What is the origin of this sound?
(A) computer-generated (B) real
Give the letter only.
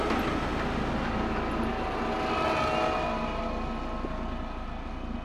B